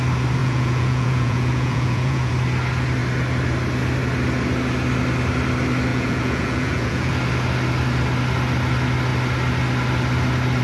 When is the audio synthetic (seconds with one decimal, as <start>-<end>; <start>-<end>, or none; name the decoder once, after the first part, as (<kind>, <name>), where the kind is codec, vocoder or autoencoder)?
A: 0.4-2.3 (vocoder, Vocos); 5.9-7.1